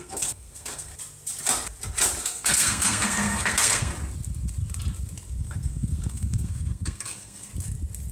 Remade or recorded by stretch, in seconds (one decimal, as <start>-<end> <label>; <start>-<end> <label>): 0.0-0.9 remade; 0.9-2.2 recorded; 2.2-3.9 remade; 3.9-5.4 recorded; 5.4-7.5 remade; 7.5-8.1 recorded